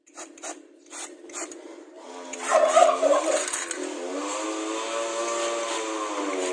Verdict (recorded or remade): recorded